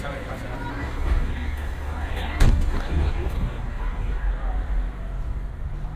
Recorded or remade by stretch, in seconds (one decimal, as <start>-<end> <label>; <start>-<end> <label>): 0.0-0.7 recorded; 0.7-4.3 remade; 4.3-6.0 recorded